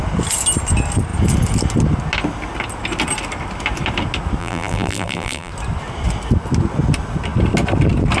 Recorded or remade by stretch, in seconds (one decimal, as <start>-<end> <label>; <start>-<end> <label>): 0.0-4.4 recorded; 4.4-5.5 remade; 5.5-8.2 recorded

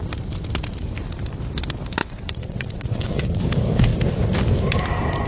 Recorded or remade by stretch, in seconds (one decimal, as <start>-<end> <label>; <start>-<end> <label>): 0.0-2.0 recorded; 2.0-3.4 remade; 3.4-5.3 recorded

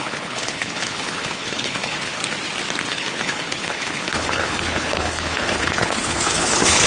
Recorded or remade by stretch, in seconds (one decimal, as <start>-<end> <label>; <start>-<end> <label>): 0.0-2.2 remade; 2.2-2.8 recorded; 2.8-6.9 remade